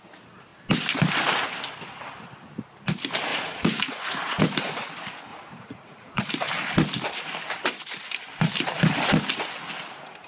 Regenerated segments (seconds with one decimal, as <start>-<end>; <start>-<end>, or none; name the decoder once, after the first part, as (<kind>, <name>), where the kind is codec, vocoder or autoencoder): 3.3-4.4 (vocoder, Vocos); 5.3-6.2